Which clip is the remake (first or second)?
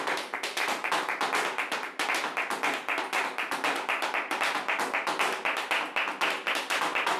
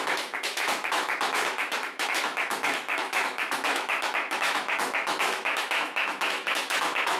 second